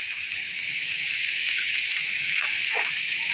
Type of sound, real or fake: fake